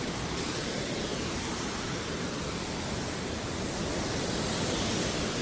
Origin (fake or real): fake